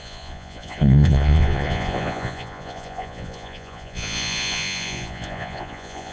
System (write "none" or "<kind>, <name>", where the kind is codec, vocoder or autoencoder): vocoder, Vocos